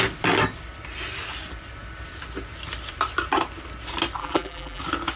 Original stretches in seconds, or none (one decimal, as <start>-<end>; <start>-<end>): 0.0-4.2; 4.8-5.2